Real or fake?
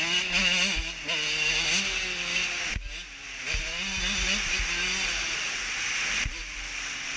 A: real